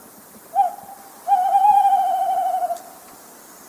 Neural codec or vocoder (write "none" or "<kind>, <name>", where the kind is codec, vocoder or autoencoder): vocoder, BigVGAN v2